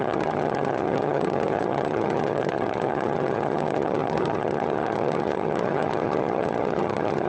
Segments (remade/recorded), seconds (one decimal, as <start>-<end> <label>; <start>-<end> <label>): 0.0-7.3 remade